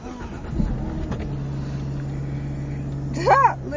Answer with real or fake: real